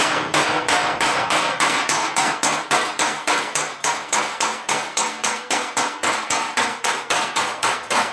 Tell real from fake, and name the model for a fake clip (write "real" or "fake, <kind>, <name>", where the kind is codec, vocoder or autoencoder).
fake, codec, SNAC